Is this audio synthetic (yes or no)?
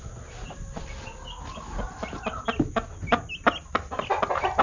no